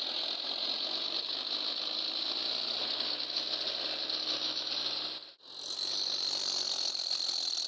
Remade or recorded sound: recorded